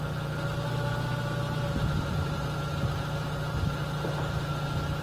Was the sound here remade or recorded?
recorded